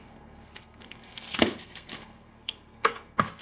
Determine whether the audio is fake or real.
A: fake